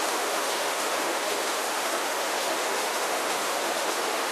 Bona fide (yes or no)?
no